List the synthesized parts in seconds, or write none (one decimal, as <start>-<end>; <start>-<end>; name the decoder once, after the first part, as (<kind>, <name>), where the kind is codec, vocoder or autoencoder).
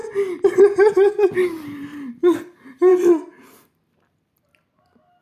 none